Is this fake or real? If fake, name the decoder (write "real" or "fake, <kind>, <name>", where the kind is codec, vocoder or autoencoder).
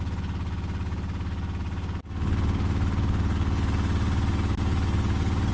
real